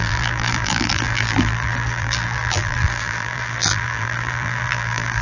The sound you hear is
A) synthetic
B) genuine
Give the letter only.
A